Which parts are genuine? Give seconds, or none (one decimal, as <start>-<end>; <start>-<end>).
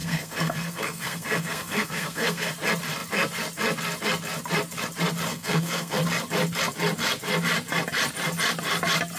2.5-5.3; 6.0-9.2